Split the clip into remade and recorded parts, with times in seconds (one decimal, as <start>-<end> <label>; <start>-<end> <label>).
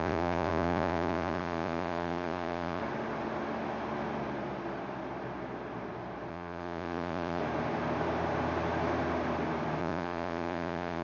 0.0-2.8 remade; 2.8-6.3 recorded; 6.3-7.4 remade; 7.4-9.8 recorded; 9.8-11.0 remade